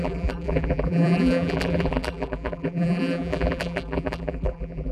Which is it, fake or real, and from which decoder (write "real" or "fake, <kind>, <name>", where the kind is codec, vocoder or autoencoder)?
fake, vocoder, BigVGAN v2